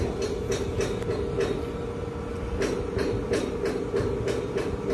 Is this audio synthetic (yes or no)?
no